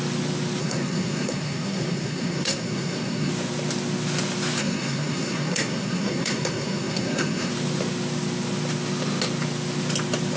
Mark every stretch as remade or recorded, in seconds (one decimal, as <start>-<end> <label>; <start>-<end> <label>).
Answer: 0.0-0.6 recorded; 0.6-3.3 remade; 3.3-4.6 recorded; 4.6-7.5 remade; 7.5-10.4 recorded